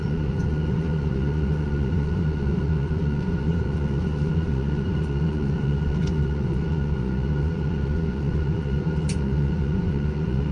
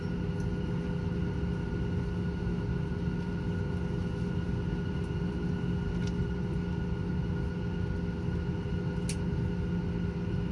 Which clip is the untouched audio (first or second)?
second